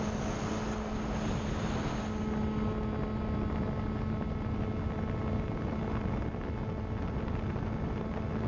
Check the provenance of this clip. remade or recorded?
recorded